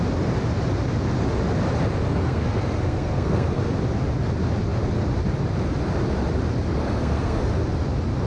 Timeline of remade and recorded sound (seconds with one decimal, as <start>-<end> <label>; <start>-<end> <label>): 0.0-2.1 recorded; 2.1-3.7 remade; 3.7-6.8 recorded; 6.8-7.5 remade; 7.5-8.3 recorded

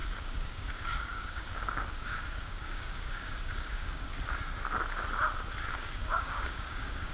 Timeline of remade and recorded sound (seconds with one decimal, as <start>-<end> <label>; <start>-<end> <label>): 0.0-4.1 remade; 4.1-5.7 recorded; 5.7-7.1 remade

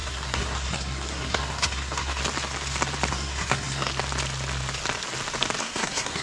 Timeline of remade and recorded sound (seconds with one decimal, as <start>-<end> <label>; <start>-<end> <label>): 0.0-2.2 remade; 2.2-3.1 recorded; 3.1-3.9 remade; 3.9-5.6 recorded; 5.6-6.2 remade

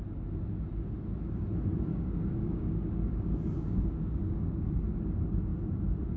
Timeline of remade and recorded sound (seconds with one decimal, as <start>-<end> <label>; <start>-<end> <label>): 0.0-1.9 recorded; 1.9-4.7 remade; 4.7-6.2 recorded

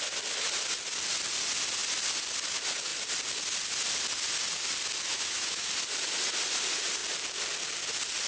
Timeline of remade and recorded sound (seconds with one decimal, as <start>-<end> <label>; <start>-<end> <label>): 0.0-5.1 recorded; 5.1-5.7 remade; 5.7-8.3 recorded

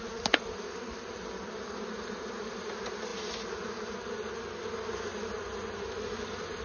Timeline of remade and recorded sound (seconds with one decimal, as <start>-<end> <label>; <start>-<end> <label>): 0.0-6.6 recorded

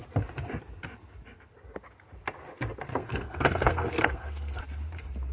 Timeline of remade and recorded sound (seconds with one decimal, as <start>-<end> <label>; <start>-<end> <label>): 0.0-2.9 recorded; 2.9-4.6 remade; 4.6-5.3 recorded

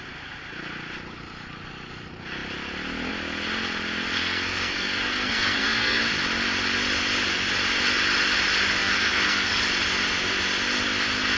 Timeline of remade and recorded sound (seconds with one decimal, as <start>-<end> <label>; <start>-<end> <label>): 0.0-4.2 recorded; 4.2-6.0 remade; 6.0-8.8 recorded; 8.8-9.6 remade; 9.6-11.4 recorded